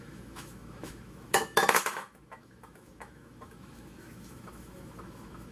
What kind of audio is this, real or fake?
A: fake